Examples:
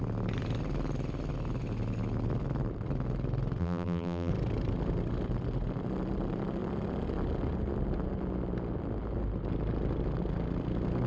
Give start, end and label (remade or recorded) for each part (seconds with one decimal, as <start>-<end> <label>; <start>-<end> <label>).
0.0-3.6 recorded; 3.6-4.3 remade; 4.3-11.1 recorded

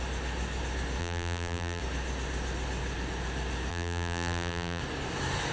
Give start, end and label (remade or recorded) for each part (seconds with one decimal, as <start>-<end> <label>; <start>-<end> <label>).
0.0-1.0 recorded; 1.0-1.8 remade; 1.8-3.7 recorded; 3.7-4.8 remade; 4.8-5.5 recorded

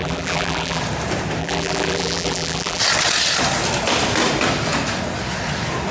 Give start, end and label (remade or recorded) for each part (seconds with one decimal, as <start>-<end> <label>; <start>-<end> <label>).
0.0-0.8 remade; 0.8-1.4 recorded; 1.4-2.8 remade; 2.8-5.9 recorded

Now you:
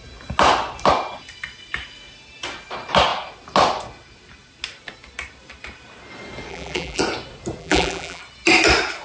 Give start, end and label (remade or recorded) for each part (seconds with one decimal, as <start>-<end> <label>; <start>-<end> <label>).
0.0-6.5 recorded; 6.5-7.0 remade; 7.0-7.6 recorded; 7.6-8.2 remade; 8.2-9.0 recorded

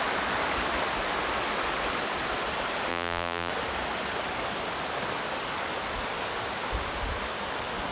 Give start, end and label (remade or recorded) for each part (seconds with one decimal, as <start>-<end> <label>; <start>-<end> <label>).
0.0-2.9 recorded; 2.9-3.5 remade; 3.5-7.9 recorded

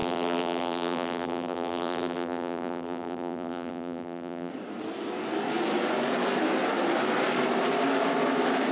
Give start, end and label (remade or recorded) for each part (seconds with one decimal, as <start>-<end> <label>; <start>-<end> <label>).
0.0-4.5 remade; 4.5-8.7 recorded